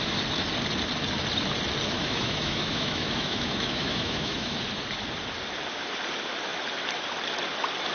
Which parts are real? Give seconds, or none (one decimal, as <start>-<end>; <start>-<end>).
0.0-2.0; 4.6-7.9